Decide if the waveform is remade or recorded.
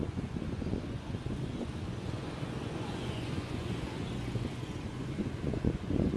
remade